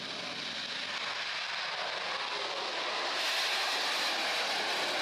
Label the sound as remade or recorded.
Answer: recorded